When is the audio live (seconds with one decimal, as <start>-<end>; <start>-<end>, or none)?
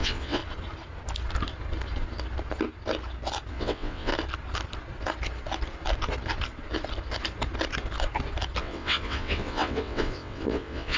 0.4-3.5; 4.1-8.6